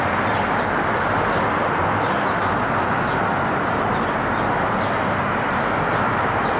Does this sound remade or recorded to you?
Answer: recorded